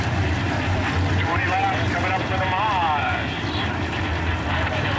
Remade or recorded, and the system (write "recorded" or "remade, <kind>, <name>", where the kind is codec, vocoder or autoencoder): remade, vocoder, BigVGAN v2